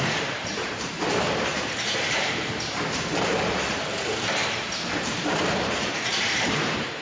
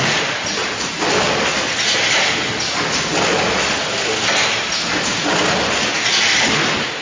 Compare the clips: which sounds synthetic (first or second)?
first